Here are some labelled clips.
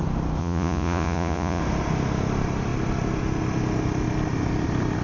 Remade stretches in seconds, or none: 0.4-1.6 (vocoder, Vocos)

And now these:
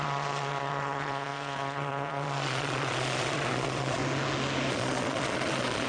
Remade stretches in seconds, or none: 0.0-4.0 (vocoder, Vocos); 4.7-5.9

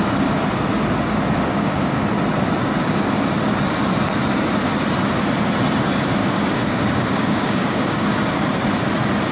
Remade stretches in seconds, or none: 1.5-2.0 (codec, DAC); 6.2-8.1